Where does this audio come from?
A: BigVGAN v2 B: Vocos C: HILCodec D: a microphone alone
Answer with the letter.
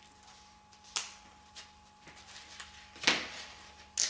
D